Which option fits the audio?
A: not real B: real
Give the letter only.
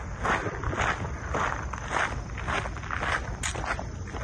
B